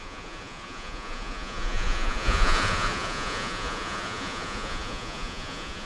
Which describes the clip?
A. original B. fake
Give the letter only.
B